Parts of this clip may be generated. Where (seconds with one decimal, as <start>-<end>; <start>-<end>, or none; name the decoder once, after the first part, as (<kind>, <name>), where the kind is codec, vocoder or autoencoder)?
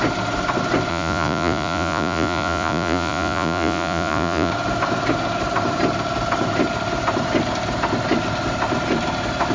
0.9-4.5 (vocoder, Vocos)